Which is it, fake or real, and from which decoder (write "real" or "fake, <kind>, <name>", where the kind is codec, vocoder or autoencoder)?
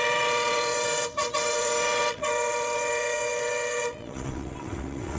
fake, vocoder, WaveNeXt